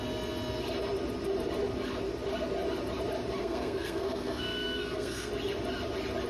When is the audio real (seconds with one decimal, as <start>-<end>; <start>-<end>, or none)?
0.0-3.4; 5.3-6.3